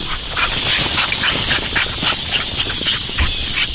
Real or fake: real